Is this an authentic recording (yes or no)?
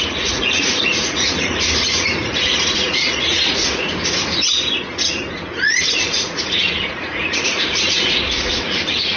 no